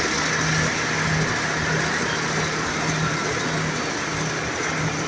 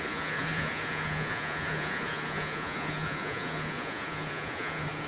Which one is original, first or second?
first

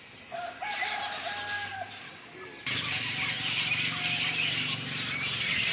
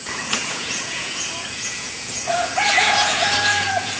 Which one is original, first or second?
first